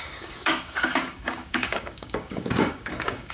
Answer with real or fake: fake